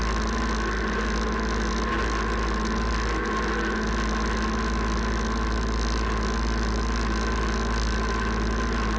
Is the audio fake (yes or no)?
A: no